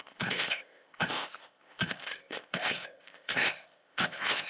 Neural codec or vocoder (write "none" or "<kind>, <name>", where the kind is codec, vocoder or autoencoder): codec, ZipCodec